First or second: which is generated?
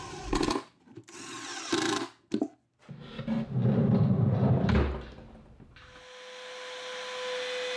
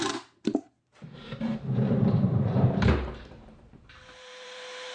second